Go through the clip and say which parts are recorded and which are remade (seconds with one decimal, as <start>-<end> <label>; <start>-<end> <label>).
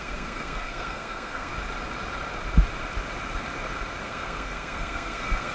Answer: 0.0-1.5 remade; 1.5-4.0 recorded; 4.0-5.5 remade